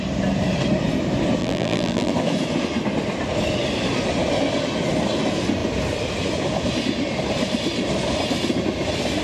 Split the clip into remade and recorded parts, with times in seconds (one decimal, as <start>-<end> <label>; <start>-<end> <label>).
0.0-1.4 recorded; 1.4-2.1 remade; 2.1-9.2 recorded